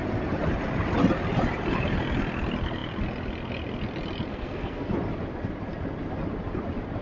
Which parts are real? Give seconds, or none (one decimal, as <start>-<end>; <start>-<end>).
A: 0.0-4.3; 4.9-7.0